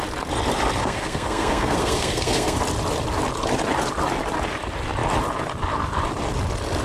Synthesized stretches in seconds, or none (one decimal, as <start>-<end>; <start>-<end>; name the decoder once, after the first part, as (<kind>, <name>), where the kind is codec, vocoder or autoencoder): 0.8-2.6 (codec, SNAC)